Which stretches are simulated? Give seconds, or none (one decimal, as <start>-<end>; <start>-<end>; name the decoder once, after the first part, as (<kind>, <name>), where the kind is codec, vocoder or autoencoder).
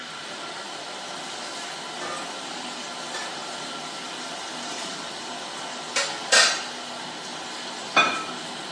3.4-5.0 (vocoder, BigVGAN v2)